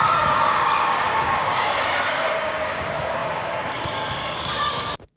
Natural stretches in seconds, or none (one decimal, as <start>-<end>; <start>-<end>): none